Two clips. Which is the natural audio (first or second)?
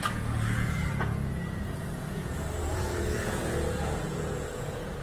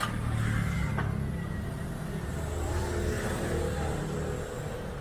second